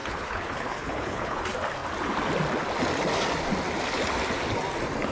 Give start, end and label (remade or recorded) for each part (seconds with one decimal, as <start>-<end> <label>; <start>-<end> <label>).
0.0-1.4 remade; 1.4-5.1 recorded